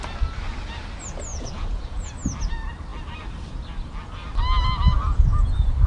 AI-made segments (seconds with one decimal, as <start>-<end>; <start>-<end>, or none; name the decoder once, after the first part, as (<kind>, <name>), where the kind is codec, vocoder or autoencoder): 1.3-2.1 (vocoder, Vocos); 5.1-5.9